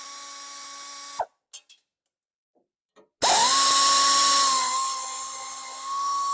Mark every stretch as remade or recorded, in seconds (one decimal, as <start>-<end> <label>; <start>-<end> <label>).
0.0-6.3 recorded